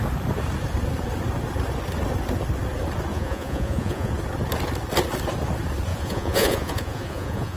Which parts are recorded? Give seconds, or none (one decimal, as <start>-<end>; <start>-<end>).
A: 0.0-3.1; 4.1-5.9